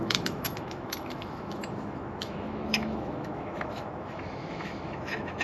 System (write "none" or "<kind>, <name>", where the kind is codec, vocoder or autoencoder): autoencoder, DAC-VAE